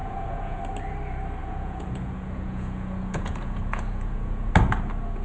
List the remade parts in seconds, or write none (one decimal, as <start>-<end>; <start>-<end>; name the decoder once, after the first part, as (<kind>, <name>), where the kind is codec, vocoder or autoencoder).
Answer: 0.0-0.6 (vocoder, Vocos); 1.4-4.5